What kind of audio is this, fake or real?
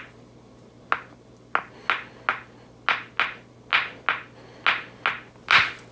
real